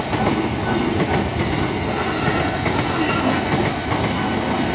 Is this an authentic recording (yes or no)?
yes